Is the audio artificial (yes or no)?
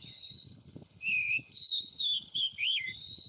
yes